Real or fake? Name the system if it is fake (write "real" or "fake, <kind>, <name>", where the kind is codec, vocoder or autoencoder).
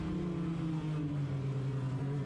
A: real